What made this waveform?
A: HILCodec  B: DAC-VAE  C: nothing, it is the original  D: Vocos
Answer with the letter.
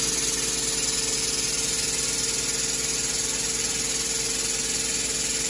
C